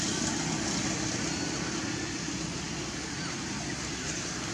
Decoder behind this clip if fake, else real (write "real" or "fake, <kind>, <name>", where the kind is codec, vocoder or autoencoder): real